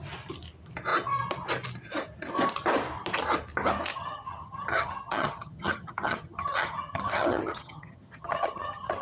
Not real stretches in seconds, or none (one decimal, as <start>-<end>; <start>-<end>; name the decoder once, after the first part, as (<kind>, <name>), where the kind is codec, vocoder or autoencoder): 3.9-9.0 (vocoder, HiFi-GAN)